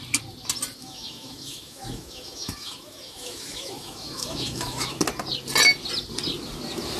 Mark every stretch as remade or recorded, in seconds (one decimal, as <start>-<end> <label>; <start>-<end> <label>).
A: 0.0-0.8 recorded; 0.8-5.0 remade; 5.0-7.0 recorded